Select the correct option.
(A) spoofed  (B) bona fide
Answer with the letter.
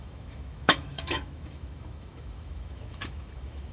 A